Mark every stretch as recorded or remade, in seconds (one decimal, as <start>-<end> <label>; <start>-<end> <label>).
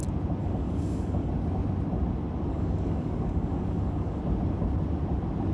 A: 0.0-0.4 recorded; 0.4-1.3 remade; 1.3-2.5 recorded; 2.5-4.2 remade; 4.2-5.5 recorded